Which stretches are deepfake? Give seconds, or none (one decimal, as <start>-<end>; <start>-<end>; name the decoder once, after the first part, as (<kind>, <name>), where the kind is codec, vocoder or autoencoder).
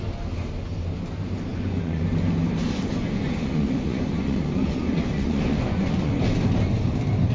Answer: 1.5-2.0 (vocoder, Vocos); 2.9-6.2